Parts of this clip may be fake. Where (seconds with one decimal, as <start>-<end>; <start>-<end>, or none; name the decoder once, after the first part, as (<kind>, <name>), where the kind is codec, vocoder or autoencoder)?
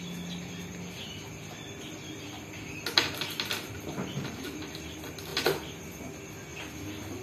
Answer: none